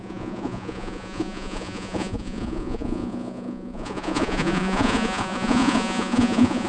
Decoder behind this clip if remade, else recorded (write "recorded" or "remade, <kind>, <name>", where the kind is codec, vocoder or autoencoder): remade, vocoder, Vocos